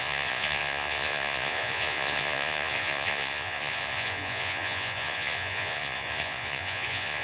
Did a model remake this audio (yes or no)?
yes